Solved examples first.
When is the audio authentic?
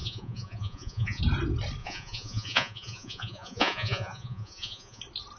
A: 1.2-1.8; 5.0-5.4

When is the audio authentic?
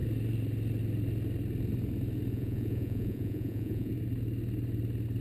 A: 0.0-2.3; 3.9-5.2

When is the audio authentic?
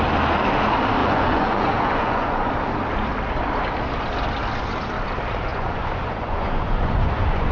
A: 0.0-1.0; 2.5-5.5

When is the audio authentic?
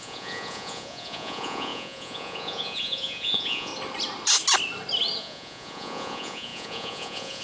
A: 3.7-5.2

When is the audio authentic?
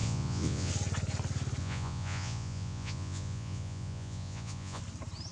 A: 0.7-1.6; 4.8-5.3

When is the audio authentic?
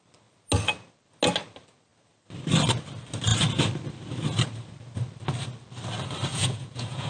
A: 0.0-6.3